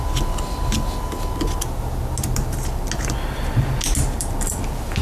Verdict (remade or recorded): recorded